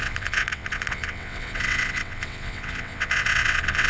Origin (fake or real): fake